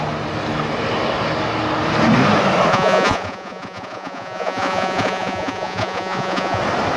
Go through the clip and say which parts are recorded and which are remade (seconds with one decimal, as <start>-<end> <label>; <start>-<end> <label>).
0.0-2.7 recorded; 2.7-6.6 remade; 6.6-7.0 recorded